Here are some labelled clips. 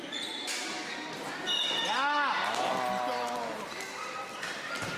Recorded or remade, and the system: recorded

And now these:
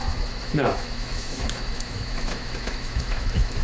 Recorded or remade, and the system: remade, autoencoder, DAC-VAE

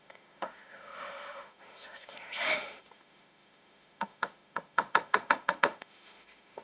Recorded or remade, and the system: remade, autoencoder, DAC-VAE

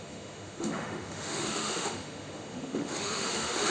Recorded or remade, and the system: remade, autoencoder, DAC-VAE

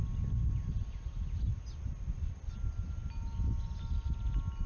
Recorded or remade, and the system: recorded